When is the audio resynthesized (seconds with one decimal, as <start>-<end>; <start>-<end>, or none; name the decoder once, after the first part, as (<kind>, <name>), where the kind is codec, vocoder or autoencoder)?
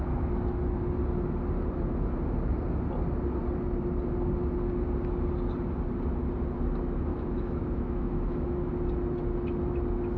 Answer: 7.1-8.7 (autoencoder, DAC-VAE)